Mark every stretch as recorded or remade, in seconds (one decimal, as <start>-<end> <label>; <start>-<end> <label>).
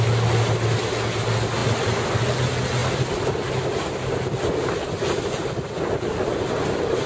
0.0-7.1 recorded